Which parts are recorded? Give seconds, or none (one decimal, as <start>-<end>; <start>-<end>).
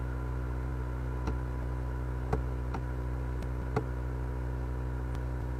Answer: 0.0-5.6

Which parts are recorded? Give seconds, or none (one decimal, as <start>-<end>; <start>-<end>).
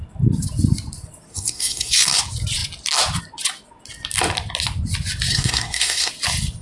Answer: 0.0-1.3; 2.2-5.3; 6.1-6.6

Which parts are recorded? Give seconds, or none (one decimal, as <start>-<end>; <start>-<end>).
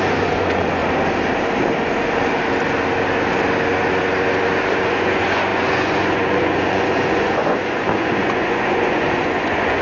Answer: 0.8-4.9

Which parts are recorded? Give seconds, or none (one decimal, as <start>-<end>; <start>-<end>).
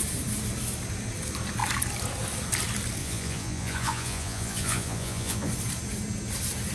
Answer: 0.0-3.0; 5.5-6.7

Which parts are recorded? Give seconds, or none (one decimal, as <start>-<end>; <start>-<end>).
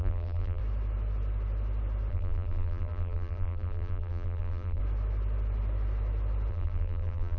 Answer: 0.6-2.1; 4.8-6.5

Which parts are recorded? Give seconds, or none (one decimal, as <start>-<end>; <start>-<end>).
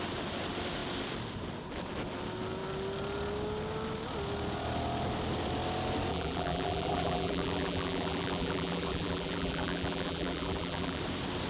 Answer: 0.0-6.1; 11.0-11.5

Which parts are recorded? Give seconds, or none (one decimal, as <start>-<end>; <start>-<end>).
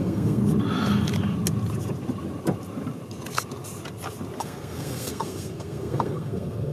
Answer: 0.4-4.4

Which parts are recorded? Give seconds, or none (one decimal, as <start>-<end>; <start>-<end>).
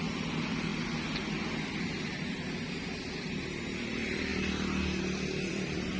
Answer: 0.7-1.3; 4.3-5.5